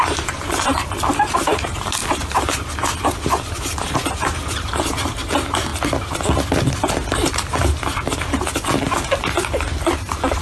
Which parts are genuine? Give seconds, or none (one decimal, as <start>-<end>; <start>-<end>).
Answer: 2.0-3.5; 5.7-10.4